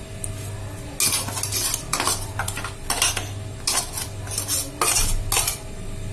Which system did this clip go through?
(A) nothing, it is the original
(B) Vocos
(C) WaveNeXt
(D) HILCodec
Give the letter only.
A